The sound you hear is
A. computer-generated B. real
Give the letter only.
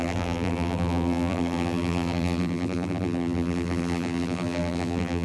A